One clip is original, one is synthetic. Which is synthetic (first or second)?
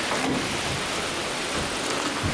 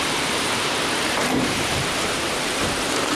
second